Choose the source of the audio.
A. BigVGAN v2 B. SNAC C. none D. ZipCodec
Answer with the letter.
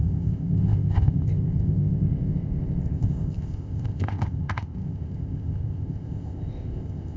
D